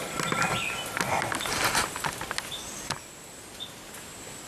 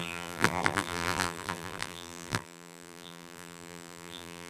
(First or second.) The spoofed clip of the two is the second